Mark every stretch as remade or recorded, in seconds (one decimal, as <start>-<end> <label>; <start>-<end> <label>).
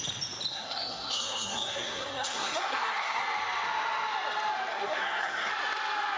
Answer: 0.0-0.5 recorded; 0.5-3.2 remade; 3.2-4.7 recorded; 4.7-5.5 remade; 5.5-6.2 recorded